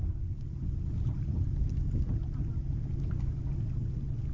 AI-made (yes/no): no